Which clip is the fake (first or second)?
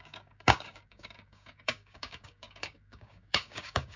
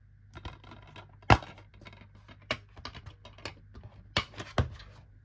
first